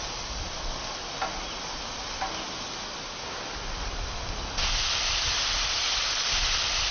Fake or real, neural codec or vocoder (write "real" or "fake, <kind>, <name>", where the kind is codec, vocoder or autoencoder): real